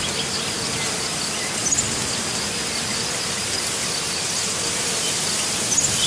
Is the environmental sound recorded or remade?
recorded